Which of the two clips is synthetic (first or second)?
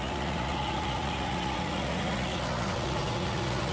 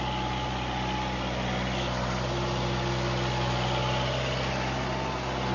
first